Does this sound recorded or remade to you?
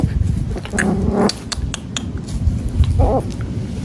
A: recorded